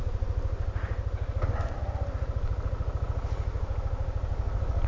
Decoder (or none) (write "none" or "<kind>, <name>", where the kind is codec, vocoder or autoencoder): none